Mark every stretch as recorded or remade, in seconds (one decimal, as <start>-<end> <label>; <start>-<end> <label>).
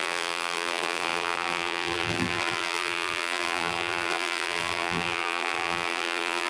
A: 0.0-6.5 remade